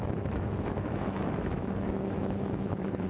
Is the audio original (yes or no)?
no